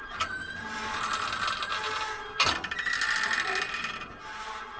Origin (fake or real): real